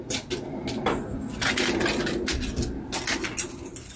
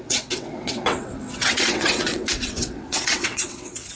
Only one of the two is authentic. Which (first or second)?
first